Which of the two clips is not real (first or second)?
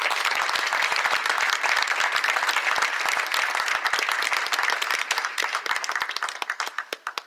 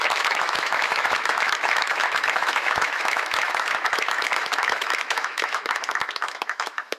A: second